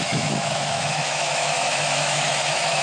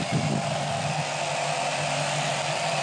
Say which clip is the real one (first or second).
second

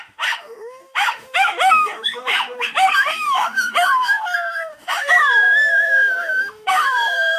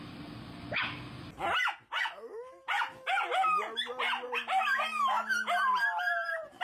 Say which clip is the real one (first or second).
second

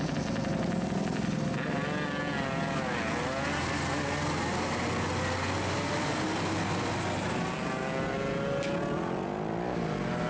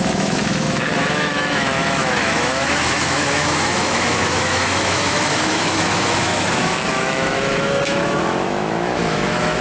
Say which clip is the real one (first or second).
first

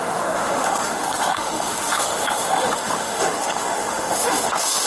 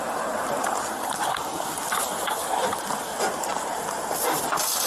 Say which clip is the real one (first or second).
second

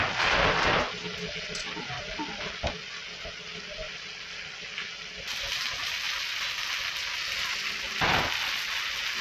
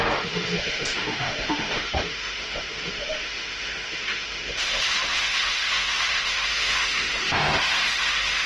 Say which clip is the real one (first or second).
first